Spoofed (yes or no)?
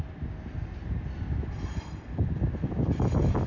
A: no